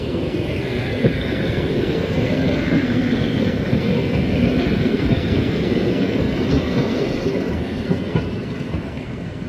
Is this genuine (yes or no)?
no